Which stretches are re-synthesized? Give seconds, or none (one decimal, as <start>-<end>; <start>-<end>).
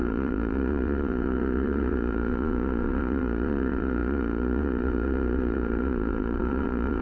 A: 0.0-7.0